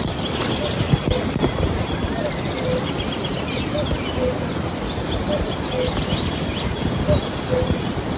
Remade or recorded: recorded